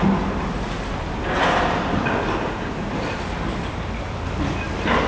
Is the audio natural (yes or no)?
yes